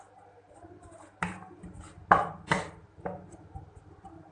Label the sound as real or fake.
fake